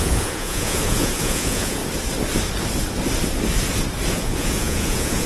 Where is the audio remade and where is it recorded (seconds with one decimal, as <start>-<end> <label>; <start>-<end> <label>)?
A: 0.0-1.8 remade; 1.8-4.1 recorded; 4.1-5.3 remade